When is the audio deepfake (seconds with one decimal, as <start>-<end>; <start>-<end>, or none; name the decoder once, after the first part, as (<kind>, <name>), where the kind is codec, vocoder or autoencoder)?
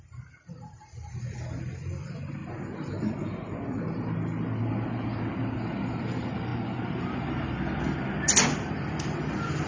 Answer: none